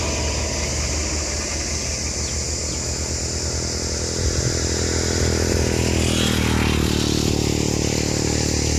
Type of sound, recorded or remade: recorded